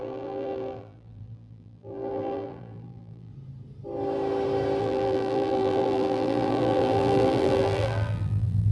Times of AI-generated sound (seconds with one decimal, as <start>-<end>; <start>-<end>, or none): 0.0-3.3; 4.8-8.7